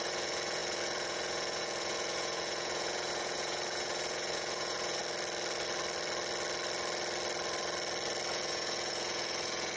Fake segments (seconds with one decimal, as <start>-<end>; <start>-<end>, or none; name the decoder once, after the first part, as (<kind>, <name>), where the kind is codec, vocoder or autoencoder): 0.0-5.0 (vocoder, Vocos); 8.3-9.8